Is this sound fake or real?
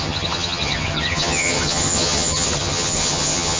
fake